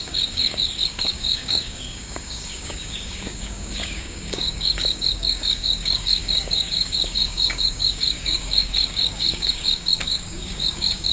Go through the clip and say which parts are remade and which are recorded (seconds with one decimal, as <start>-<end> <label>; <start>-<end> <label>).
0.0-11.1 remade